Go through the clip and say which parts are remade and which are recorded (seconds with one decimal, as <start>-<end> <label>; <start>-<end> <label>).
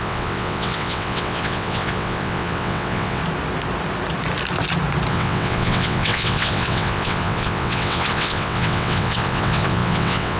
0.0-3.2 remade; 3.2-5.1 recorded; 5.1-10.4 remade